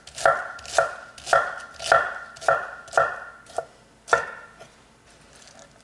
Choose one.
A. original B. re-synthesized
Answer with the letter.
A